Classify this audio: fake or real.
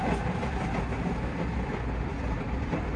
real